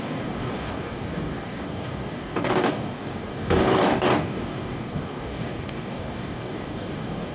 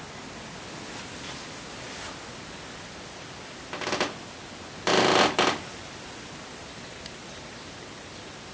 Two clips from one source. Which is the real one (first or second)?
second